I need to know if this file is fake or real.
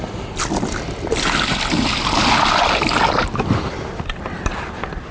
real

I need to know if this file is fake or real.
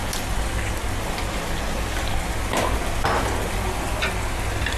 real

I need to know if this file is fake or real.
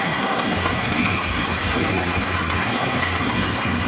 fake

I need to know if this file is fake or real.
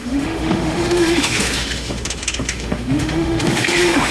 fake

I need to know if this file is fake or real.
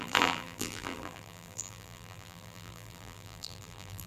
fake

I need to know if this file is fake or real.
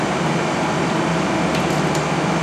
real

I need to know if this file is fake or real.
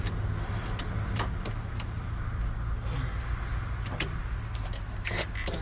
real